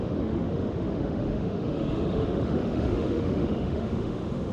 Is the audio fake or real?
fake